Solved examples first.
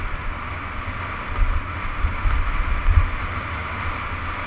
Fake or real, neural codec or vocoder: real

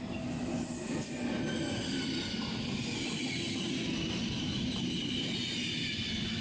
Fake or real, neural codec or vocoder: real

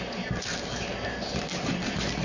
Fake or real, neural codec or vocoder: real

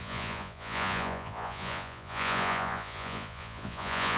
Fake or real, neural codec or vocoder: fake, vocoder, Vocos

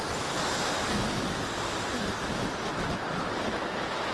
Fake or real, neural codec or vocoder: real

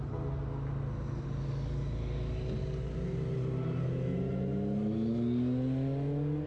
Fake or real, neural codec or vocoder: real